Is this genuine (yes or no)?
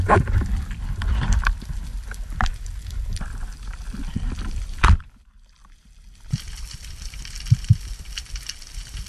no